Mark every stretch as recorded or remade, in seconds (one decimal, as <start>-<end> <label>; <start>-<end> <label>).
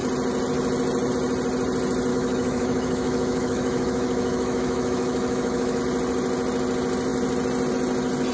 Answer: 0.0-2.1 recorded; 2.1-5.8 remade; 5.8-8.3 recorded